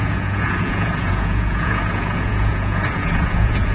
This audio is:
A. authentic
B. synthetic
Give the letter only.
B